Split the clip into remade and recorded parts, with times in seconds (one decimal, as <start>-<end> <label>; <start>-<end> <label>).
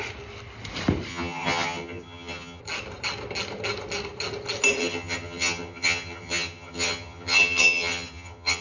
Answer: 0.0-1.1 recorded; 1.1-2.6 remade; 2.6-4.8 recorded; 4.8-8.6 remade